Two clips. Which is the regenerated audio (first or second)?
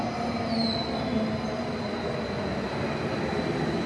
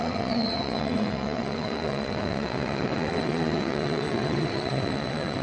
second